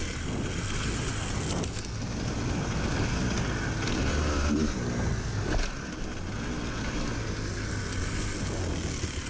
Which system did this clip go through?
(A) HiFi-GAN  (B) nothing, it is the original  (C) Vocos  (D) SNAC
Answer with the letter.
B